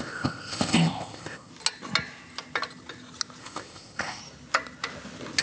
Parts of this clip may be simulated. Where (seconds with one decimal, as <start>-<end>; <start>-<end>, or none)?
0.0-1.5; 3.4-4.2